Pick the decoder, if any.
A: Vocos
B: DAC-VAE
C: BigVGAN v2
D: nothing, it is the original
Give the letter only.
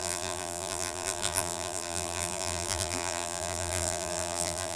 C